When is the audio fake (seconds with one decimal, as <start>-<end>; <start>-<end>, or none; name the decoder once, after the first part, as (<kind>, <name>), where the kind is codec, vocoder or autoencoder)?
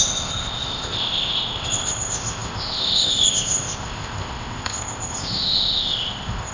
0.0-6.5 (codec, ZipCodec)